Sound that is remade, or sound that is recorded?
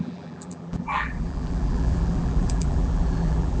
remade